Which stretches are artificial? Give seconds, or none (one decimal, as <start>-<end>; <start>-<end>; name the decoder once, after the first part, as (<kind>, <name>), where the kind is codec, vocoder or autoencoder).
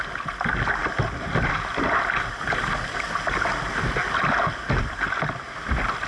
none